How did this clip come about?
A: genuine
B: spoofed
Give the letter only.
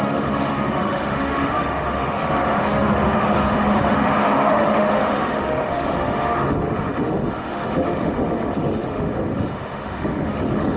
B